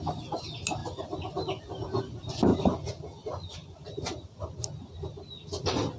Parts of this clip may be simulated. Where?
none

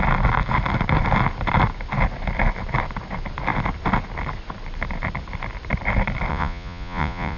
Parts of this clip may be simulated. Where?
6.3-7.4 (vocoder, Vocos)

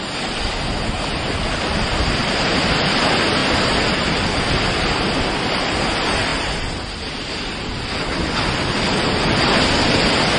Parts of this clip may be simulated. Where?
3.4-4.5 (vocoder, BigVGAN v2)